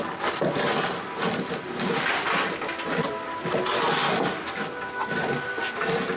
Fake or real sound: real